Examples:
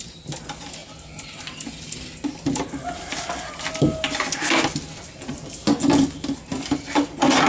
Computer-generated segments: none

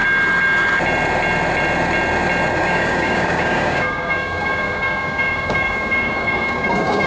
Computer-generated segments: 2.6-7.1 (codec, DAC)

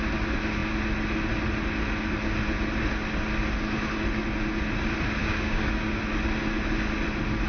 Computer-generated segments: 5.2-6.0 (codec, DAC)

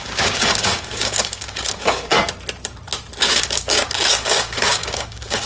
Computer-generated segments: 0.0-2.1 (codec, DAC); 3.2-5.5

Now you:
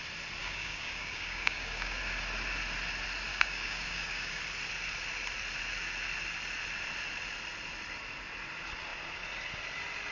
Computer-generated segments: 0.4-2.0 (codec, DAC); 3.3-4.4